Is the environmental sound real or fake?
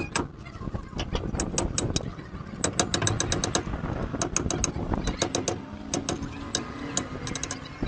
real